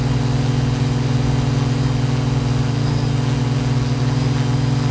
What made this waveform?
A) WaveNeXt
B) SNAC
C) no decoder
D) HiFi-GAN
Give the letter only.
C